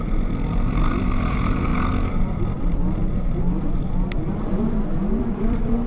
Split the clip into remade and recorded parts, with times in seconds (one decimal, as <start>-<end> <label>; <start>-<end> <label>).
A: 0.0-1.7 remade; 1.7-2.6 recorded; 2.6-3.0 remade; 3.0-3.9 recorded; 3.9-5.9 remade